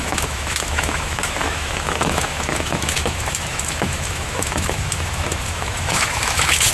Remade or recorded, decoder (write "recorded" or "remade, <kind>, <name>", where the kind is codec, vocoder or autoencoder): remade, autoencoder, DAC-VAE